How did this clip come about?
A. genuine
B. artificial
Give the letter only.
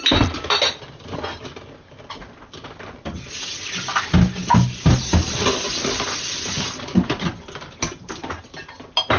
A